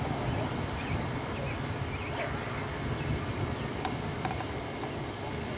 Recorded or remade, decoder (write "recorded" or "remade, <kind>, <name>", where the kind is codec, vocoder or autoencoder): recorded